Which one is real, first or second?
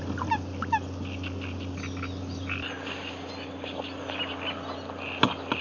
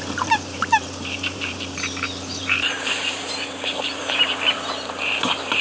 first